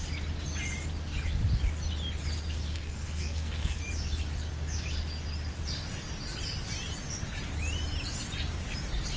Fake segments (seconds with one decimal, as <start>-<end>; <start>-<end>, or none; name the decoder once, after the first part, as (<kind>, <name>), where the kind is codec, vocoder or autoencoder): 2.7-3.8 (codec, SNAC)